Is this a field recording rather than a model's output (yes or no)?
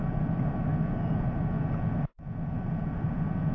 no